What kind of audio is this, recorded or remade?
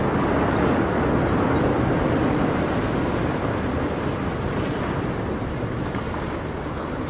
recorded